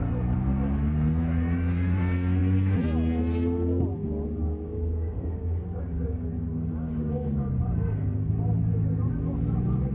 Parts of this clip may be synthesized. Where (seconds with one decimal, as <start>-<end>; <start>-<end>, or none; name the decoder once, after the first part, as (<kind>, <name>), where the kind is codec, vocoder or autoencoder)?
3.9-8.3 (codec, DAC)